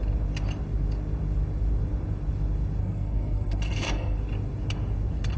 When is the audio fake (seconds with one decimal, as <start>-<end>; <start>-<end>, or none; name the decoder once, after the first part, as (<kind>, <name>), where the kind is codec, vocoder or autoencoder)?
2.8-4.2 (codec, SNAC)